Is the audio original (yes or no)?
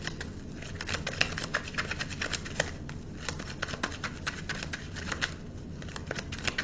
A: yes